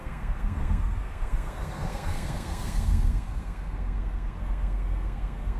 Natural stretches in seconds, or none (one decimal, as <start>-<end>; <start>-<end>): none